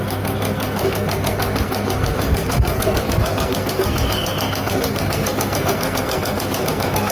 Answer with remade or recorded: remade